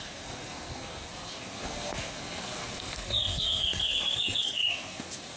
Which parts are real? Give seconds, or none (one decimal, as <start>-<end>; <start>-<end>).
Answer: none